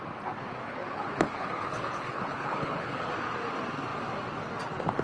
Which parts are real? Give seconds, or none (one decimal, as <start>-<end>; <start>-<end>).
0.0-0.6; 3.1-5.0